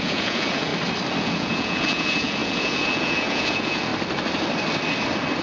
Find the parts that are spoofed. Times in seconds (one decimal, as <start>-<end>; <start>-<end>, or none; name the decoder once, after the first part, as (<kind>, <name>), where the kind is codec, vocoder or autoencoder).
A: 0.0-0.7 (vocoder, Vocos); 1.2-3.9